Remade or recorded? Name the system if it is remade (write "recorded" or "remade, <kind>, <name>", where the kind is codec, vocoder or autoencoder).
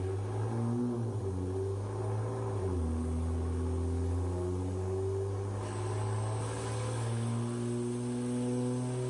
recorded